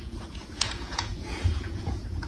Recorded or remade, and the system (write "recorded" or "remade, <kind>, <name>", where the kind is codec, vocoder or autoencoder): remade, vocoder, Vocos